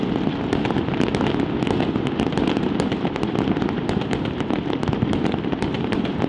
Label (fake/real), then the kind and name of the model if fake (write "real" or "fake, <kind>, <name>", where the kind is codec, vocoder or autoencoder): real